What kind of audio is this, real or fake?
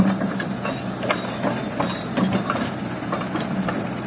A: fake